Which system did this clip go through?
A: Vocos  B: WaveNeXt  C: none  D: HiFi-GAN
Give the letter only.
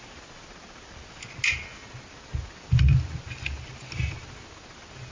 C